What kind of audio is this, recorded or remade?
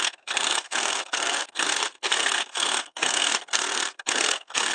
remade